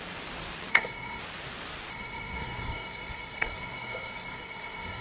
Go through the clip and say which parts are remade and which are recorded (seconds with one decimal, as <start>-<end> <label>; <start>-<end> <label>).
0.0-0.7 recorded; 0.7-1.2 remade; 1.2-1.9 recorded; 1.9-5.0 remade